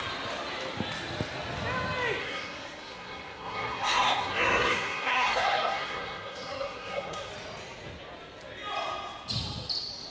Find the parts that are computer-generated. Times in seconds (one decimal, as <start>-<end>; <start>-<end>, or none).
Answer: 2.2-7.3